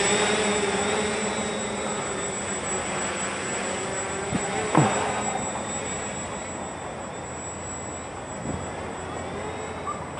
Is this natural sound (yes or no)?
yes